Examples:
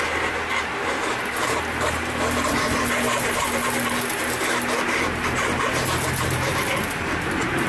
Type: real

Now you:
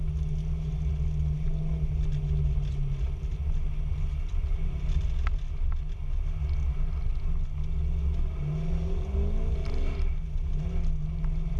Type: real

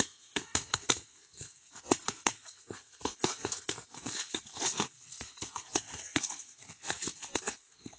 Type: fake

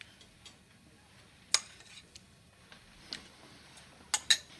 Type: real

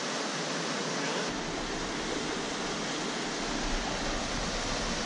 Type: real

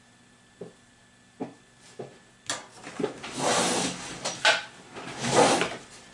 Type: real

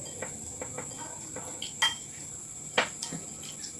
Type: real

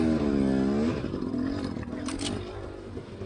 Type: real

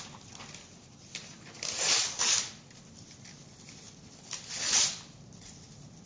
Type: real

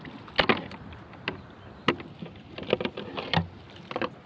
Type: real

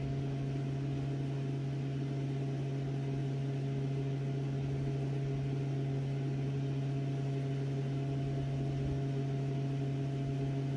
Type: real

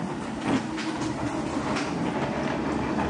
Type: real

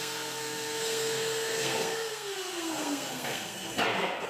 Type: fake